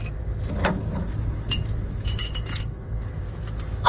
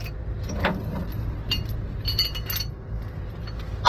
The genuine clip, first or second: second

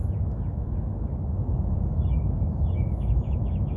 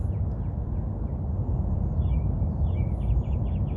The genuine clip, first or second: second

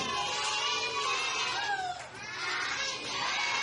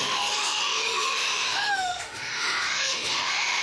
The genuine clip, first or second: first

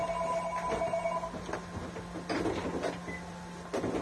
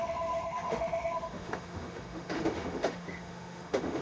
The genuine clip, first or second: first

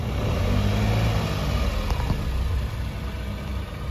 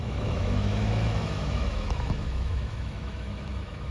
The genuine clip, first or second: first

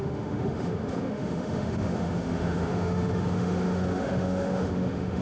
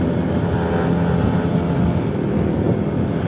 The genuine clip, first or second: second